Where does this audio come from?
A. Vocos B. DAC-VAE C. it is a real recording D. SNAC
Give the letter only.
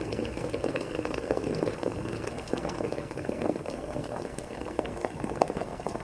D